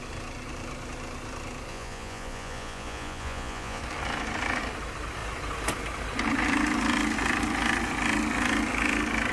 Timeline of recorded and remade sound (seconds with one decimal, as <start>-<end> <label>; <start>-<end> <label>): 0.0-1.7 recorded; 1.7-3.8 remade; 3.8-9.3 recorded